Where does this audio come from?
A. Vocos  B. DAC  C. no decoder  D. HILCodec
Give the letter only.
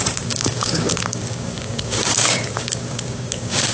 B